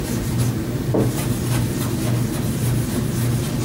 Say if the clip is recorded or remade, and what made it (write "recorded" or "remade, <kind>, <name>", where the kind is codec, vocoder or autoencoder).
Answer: recorded